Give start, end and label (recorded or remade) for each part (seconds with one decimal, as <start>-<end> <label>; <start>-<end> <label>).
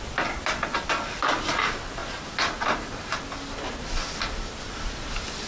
0.0-2.0 remade; 2.0-5.5 recorded